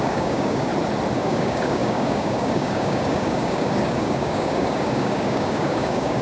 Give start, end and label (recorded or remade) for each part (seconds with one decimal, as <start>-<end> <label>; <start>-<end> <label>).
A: 0.0-0.7 remade; 0.7-1.2 recorded; 1.2-6.2 remade